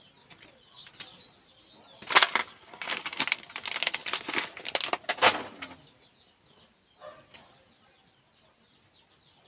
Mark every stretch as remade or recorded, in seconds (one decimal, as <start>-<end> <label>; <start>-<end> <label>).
0.0-2.4 recorded; 2.4-3.2 remade; 3.2-9.5 recorded

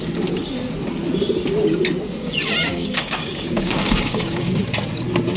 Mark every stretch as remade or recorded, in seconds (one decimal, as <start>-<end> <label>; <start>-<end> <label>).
0.0-2.7 recorded; 2.7-4.6 remade; 4.6-5.4 recorded

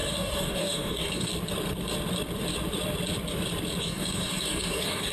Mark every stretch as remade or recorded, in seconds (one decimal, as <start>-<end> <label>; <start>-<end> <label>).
0.0-1.3 remade; 1.3-3.8 recorded; 3.8-5.1 remade

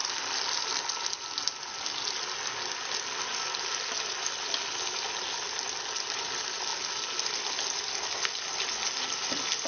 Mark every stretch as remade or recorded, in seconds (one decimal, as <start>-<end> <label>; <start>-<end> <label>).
0.0-9.7 recorded

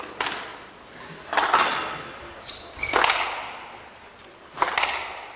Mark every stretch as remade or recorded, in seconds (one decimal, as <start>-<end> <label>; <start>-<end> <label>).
0.0-5.4 recorded

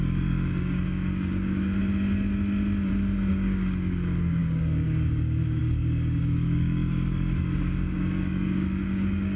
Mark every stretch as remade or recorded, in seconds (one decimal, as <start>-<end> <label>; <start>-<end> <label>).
0.0-1.8 remade; 1.8-3.3 recorded; 3.3-9.4 remade

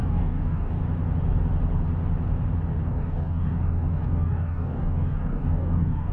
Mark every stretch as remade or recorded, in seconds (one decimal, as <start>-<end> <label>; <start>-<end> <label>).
0.0-0.8 remade; 0.8-2.7 recorded; 2.7-6.1 remade

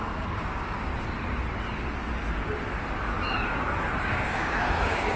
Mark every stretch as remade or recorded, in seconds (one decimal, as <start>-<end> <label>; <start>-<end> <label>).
0.0-0.9 remade; 0.9-4.0 recorded; 4.0-5.2 remade